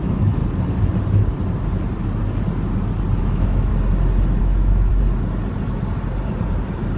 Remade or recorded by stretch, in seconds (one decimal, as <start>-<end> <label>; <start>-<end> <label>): 0.0-0.4 remade; 0.4-3.2 recorded; 3.2-3.7 remade; 3.7-4.4 recorded; 4.4-4.9 remade; 4.9-7.0 recorded